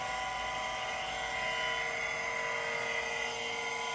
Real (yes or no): yes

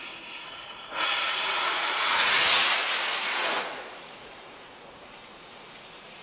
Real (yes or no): no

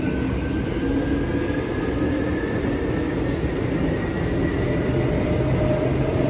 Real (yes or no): yes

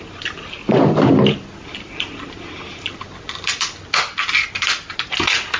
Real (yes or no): yes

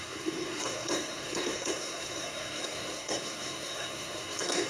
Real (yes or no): no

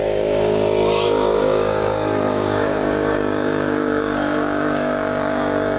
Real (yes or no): no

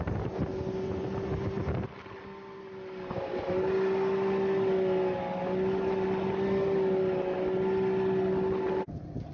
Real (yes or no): yes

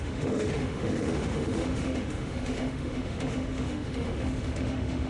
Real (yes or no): no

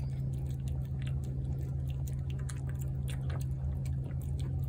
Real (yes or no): yes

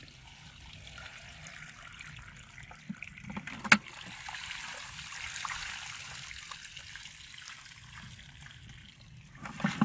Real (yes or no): yes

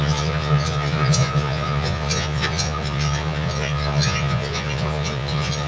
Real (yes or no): no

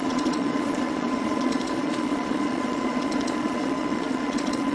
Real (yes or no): no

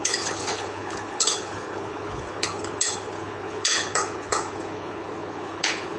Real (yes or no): no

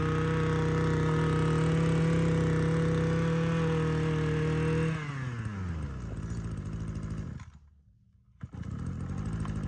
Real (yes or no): yes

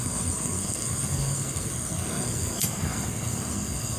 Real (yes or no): no